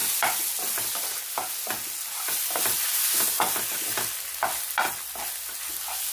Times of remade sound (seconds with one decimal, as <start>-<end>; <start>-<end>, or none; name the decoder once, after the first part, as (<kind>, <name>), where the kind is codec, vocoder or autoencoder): none